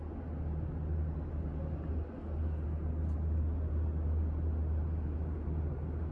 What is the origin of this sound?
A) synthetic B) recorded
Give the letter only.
B